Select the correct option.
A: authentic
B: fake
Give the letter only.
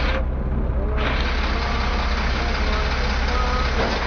A